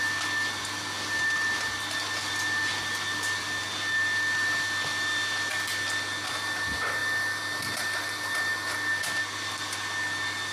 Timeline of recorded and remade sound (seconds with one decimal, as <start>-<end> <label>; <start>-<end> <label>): 0.0-10.5 recorded